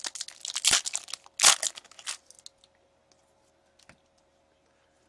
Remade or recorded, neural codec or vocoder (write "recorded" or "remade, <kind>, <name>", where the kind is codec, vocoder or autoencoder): recorded